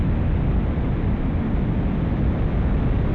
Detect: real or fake real